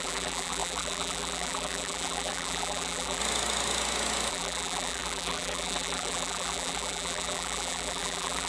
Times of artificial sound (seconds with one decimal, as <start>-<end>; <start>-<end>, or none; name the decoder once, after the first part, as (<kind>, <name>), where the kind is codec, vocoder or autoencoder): 0.0-3.2 (vocoder, BigVGAN v2); 4.3-8.5